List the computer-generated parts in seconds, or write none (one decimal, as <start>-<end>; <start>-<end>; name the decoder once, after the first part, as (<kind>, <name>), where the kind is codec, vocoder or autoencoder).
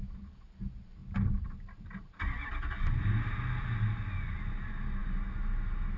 1.0-2.5 (vocoder, BigVGAN v2)